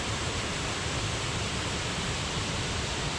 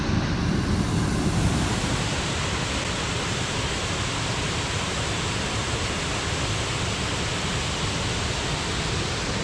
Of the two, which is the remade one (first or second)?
first